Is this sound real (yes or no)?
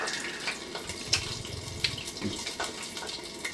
yes